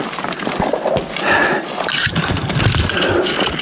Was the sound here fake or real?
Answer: real